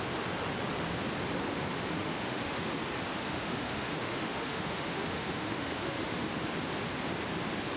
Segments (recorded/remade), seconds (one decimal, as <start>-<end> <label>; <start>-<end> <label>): 0.0-2.0 recorded; 2.0-2.7 remade; 2.7-3.1 recorded; 3.1-6.3 remade; 6.3-7.8 recorded